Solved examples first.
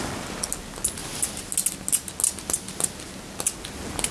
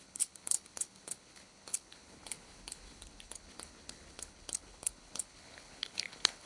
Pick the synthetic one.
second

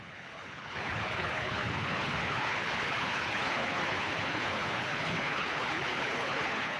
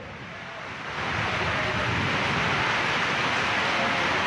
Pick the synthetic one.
first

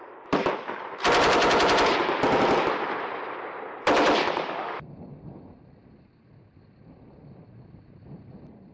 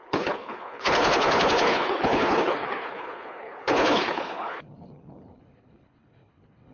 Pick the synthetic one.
second